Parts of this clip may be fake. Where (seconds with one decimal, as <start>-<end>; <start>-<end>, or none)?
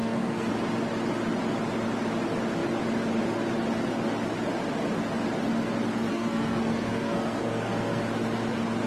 0.0-0.5; 6.1-8.0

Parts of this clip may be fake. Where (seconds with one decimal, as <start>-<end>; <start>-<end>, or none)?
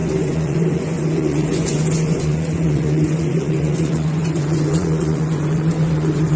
0.0-6.4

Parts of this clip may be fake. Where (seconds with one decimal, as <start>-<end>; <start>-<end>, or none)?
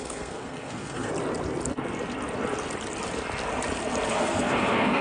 0.0-1.1; 4.1-5.0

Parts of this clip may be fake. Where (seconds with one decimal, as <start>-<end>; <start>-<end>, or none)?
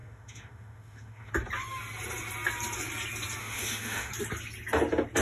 0.0-1.3; 3.4-4.1